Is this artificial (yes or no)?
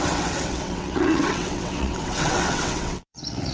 yes